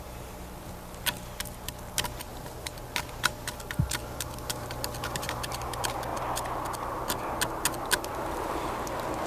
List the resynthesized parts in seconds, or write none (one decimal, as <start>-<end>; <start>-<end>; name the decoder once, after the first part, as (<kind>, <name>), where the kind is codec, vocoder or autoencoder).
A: none